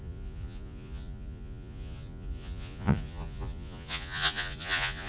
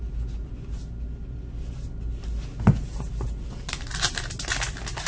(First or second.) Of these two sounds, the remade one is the first